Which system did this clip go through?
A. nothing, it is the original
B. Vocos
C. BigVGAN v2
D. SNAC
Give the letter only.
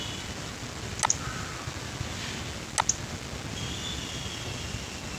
A